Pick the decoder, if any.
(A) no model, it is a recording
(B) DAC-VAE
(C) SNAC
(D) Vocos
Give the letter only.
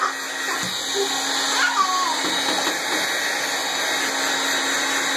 A